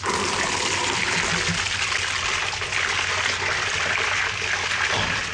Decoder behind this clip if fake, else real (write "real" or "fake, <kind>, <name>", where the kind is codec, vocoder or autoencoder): real